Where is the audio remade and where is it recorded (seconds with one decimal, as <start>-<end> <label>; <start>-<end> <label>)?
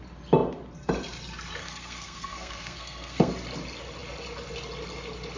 0.0-1.6 recorded; 1.6-3.3 remade; 3.3-5.4 recorded